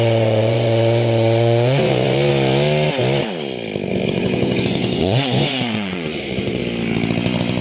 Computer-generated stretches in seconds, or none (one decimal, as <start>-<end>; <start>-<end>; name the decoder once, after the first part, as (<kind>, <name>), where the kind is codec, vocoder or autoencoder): 0.0-2.3 (vocoder, Vocos); 3.9-6.6